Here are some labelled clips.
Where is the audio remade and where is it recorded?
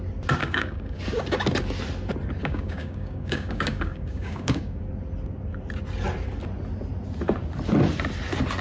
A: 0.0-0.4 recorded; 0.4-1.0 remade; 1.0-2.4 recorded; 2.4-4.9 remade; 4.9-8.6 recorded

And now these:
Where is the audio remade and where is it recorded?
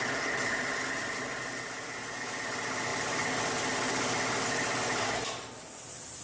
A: 0.0-6.2 recorded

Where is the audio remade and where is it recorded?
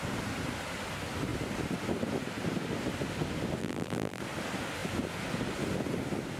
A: 0.0-3.6 recorded; 3.6-4.2 remade; 4.2-6.4 recorded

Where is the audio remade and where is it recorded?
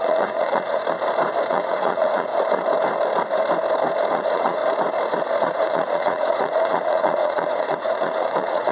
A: 0.0-0.8 remade; 0.8-1.5 recorded; 1.5-2.3 remade; 2.3-4.1 recorded; 4.1-4.6 remade; 4.6-5.4 recorded; 5.4-8.7 remade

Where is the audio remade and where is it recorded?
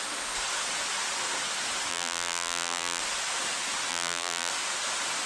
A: 0.0-1.9 recorded; 1.9-3.0 remade; 3.0-3.9 recorded; 3.9-4.5 remade; 4.5-5.3 recorded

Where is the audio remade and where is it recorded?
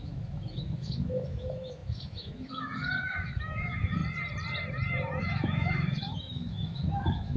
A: 0.0-4.0 remade; 4.0-5.2 recorded; 5.2-7.4 remade